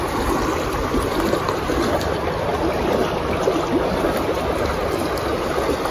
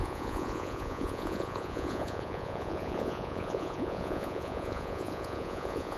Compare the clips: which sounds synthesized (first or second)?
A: second